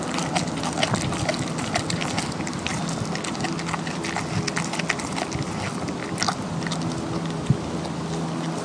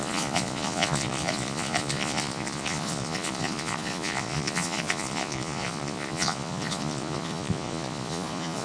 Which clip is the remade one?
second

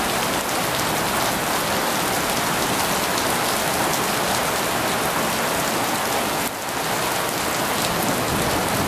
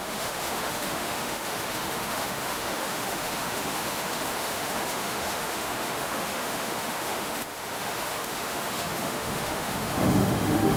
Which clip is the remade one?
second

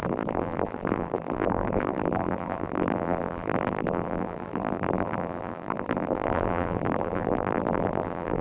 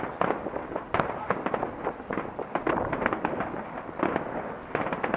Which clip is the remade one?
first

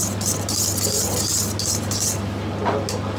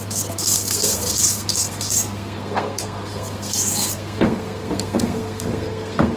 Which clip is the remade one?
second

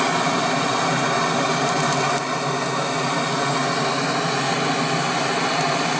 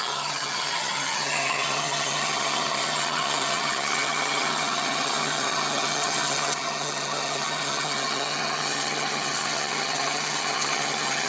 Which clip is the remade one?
second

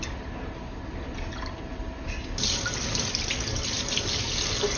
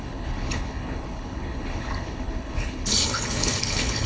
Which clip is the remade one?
second